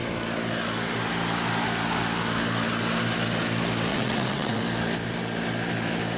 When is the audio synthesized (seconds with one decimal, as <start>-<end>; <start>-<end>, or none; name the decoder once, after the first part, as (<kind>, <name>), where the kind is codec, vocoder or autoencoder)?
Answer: 3.9-4.6 (vocoder, WaveNeXt)